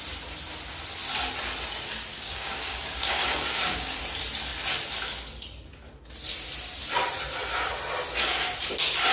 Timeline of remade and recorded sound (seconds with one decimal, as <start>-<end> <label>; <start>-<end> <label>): 0.0-2.1 recorded; 2.1-4.0 remade; 4.0-9.1 recorded